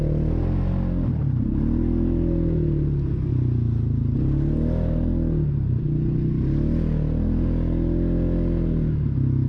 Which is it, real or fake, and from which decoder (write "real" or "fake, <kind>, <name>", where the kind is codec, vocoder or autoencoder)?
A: real